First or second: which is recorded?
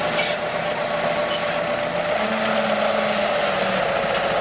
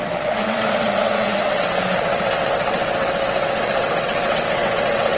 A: first